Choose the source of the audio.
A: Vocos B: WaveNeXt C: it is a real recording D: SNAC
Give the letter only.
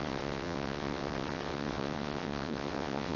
B